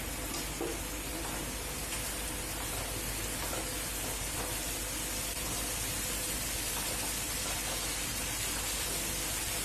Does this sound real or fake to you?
real